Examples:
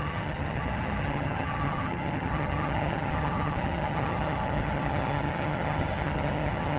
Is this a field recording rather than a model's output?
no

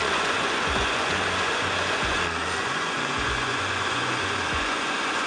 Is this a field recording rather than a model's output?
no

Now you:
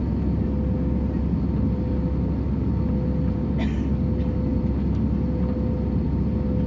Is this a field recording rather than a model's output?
yes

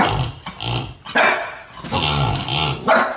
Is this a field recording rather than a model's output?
yes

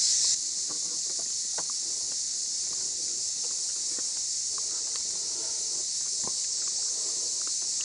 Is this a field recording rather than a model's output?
yes